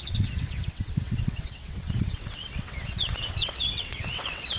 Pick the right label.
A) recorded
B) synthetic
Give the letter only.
B